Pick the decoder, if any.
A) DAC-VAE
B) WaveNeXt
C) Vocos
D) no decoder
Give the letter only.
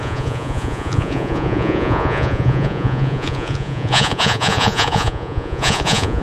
C